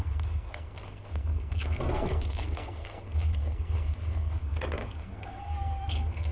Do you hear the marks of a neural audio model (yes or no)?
yes